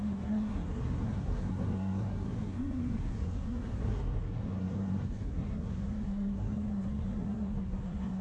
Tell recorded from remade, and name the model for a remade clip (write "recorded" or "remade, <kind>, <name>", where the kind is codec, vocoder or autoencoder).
remade, codec, SNAC